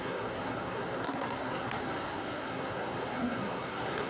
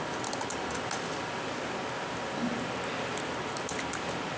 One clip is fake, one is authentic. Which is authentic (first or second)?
second